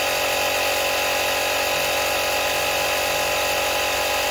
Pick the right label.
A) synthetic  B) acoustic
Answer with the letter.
B